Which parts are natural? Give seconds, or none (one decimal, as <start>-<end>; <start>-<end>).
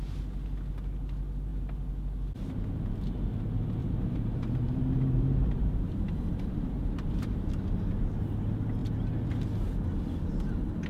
0.0-3.8; 7.5-10.9